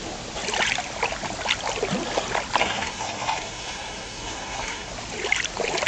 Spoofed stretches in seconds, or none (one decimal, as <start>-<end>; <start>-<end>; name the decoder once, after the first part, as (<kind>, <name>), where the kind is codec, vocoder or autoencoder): 2.6-4.9 (codec, SNAC)